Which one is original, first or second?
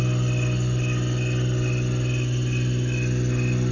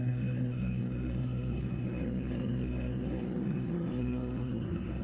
first